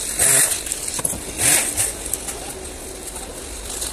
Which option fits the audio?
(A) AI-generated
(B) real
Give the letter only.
B